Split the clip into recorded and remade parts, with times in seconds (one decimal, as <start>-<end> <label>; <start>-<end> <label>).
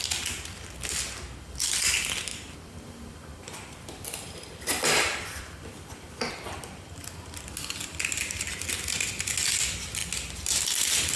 0.0-2.3 recorded; 2.3-6.3 remade; 6.3-11.2 recorded